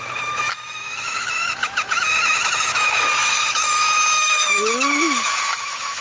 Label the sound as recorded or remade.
remade